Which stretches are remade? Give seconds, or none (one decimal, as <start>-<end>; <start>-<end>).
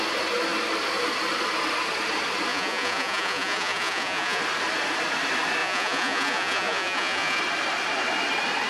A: 2.5-4.4; 5.6-7.4